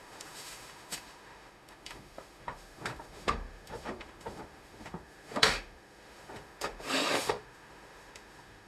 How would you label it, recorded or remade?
remade